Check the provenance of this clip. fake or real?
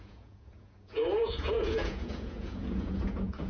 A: fake